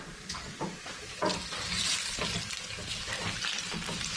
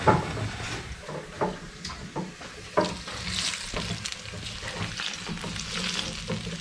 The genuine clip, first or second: second